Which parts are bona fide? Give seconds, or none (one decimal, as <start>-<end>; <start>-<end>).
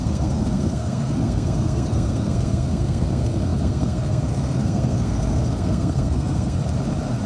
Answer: 6.6-7.3